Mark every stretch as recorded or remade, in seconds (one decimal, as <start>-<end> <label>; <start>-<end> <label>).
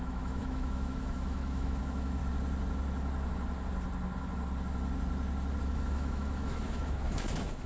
0.0-2.2 remade; 2.2-5.6 recorded; 5.6-7.7 remade